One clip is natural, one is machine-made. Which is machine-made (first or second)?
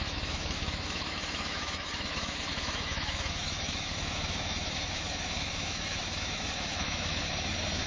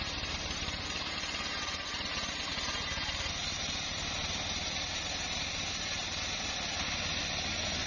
first